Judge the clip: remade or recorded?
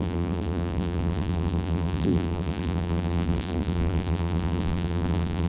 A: remade